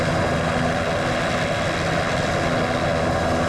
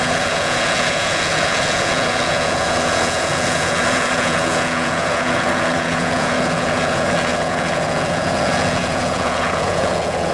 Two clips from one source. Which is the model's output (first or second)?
second